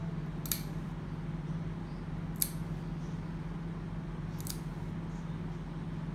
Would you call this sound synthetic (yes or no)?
no